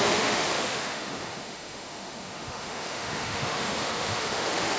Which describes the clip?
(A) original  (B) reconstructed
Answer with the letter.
B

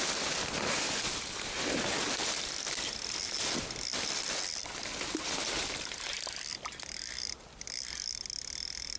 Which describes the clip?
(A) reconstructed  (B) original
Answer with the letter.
B